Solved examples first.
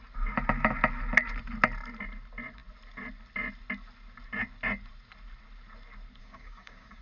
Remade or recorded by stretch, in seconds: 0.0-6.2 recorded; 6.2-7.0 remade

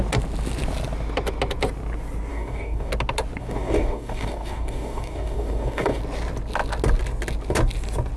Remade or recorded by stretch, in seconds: 0.0-2.3 recorded; 2.3-2.9 remade; 2.9-3.4 recorded; 3.4-6.0 remade; 6.0-8.2 recorded

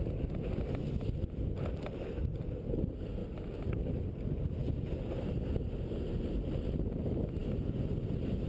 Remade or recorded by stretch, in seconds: 0.0-8.5 recorded